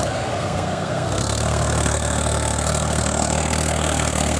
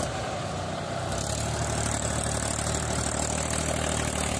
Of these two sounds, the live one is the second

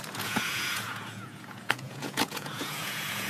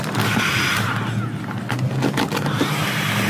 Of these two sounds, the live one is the second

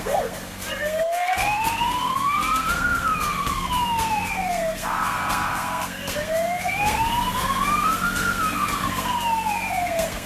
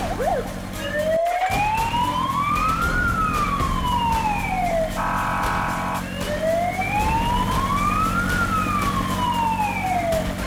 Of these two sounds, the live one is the second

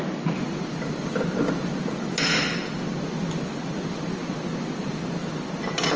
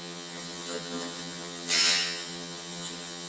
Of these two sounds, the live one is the first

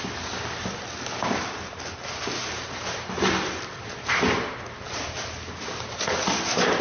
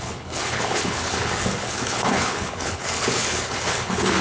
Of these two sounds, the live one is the first